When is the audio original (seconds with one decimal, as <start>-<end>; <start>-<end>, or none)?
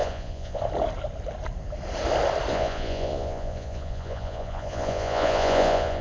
0.6-2.5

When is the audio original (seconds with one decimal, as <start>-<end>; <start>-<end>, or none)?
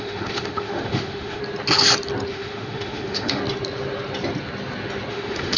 1.4-2.3; 3.4-5.1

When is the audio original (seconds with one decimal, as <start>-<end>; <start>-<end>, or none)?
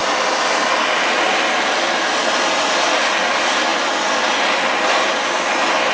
2.9-5.9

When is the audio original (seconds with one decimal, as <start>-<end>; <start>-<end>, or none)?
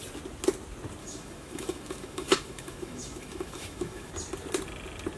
0.0-1.0; 4.1-5.2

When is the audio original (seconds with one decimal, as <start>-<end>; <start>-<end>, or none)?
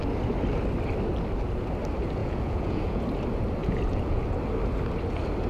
0.0-2.2; 3.0-3.6; 4.2-5.5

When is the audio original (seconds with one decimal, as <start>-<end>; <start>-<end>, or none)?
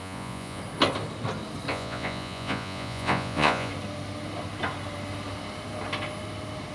0.6-1.7; 3.7-6.7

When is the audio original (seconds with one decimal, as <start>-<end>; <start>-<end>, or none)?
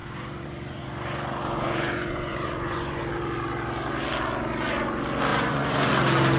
3.0-5.3; 5.9-6.4